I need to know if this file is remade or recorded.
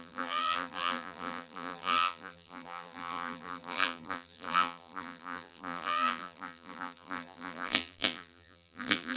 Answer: remade